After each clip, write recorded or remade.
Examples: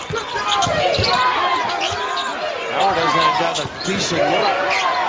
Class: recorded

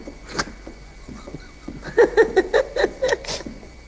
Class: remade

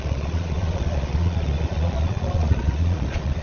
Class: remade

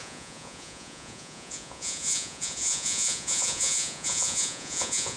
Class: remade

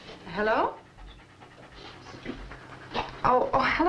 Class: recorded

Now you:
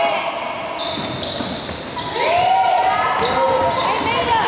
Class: recorded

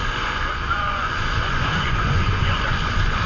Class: remade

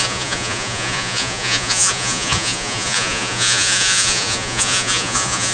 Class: remade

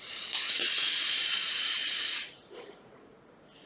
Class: remade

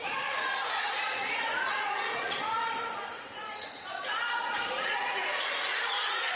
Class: remade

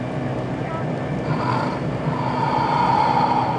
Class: recorded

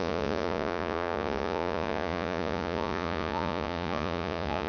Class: remade